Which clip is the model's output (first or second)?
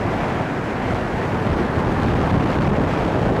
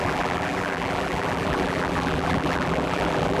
second